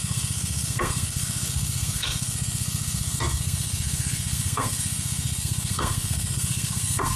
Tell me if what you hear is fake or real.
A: fake